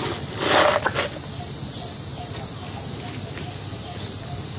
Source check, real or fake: real